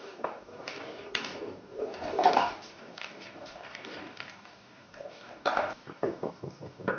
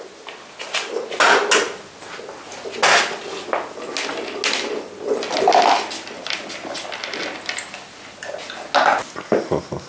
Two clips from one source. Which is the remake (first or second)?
first